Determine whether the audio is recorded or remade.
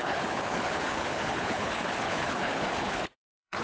remade